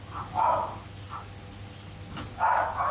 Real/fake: real